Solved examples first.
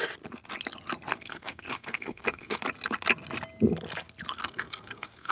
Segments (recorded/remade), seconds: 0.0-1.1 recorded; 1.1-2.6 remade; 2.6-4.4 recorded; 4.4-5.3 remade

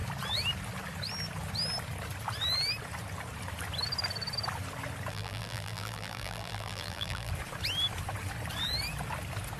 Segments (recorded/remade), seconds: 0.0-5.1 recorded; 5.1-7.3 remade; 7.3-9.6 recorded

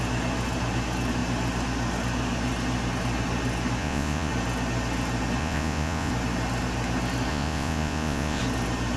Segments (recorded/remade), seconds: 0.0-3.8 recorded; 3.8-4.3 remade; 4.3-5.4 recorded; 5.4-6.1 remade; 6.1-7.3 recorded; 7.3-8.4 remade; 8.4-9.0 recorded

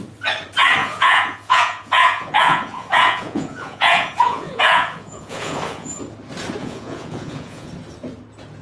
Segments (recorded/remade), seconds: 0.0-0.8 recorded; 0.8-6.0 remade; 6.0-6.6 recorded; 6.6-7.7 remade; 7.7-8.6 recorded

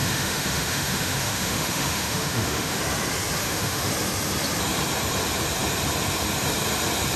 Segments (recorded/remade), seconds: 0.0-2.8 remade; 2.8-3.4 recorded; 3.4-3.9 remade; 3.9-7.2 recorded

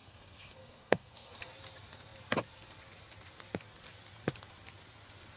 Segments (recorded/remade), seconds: 0.0-1.4 remade; 1.4-5.4 recorded

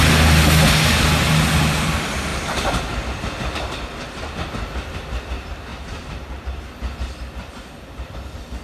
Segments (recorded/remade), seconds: 0.0-2.3 recorded; 2.3-3.0 remade; 3.0-5.7 recorded; 5.7-6.6 remade; 6.6-8.6 recorded